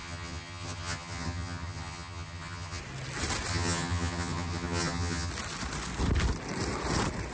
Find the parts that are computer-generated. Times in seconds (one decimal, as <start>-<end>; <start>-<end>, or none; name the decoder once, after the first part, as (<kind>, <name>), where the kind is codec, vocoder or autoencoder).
0.0-2.8 (vocoder, HiFi-GAN); 3.5-5.3